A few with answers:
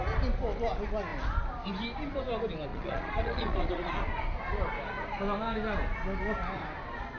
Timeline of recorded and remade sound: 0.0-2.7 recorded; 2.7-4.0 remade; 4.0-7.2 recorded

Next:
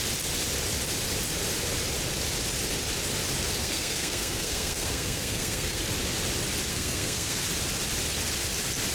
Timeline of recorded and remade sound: 0.0-3.6 recorded; 3.6-5.8 remade; 5.8-6.7 recorded; 6.7-7.4 remade; 7.4-8.9 recorded